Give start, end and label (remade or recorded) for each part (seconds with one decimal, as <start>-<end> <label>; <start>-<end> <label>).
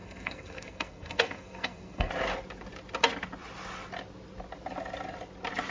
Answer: 0.0-2.1 remade; 2.1-5.7 recorded